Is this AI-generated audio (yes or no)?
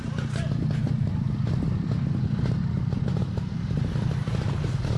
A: yes